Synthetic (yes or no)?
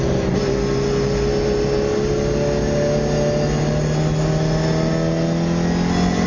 no